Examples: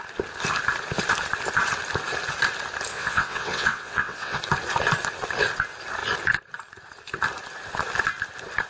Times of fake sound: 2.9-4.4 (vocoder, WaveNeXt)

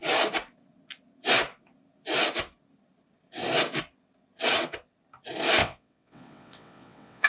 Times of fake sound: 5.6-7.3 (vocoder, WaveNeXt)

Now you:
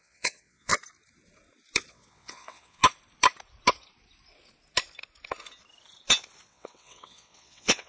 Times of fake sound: 0.0-0.7 (vocoder, WaveNeXt); 1.9-2.8; 6.5-7.9

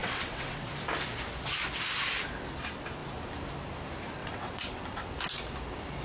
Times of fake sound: 0.0-0.7 (vocoder, WaveNeXt); 4.2-5.1